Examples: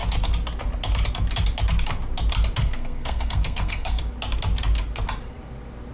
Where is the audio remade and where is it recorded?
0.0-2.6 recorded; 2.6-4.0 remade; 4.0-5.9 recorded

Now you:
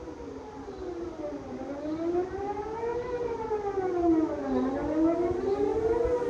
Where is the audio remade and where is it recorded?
0.0-6.3 recorded

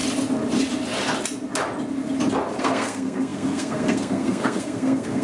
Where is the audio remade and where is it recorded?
0.0-2.6 recorded; 2.6-5.2 remade

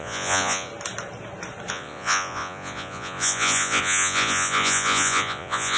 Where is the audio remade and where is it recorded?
0.0-0.7 remade; 0.7-1.7 recorded; 1.7-5.8 remade

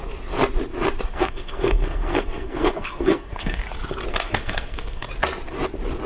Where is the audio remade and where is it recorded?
0.0-1.1 recorded; 1.1-3.6 remade; 3.6-4.1 recorded; 4.1-5.1 remade; 5.1-6.1 recorded